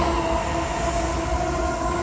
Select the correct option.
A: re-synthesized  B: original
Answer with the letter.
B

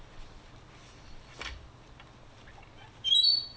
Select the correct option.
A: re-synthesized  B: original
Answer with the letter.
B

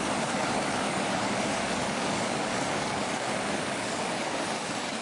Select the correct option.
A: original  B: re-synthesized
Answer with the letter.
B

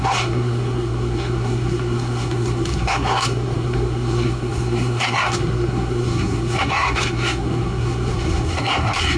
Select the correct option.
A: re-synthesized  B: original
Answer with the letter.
A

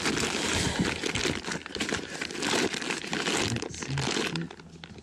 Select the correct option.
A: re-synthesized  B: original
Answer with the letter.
B